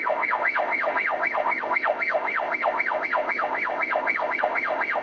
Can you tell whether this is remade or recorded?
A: remade